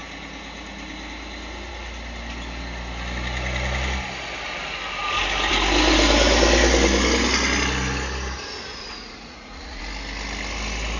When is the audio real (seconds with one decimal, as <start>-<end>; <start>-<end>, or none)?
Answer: 0.0-8.7; 9.8-11.0